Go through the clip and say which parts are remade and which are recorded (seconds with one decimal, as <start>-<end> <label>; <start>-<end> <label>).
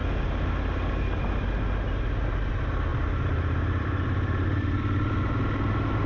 0.0-2.9 recorded; 2.9-5.2 remade; 5.2-6.1 recorded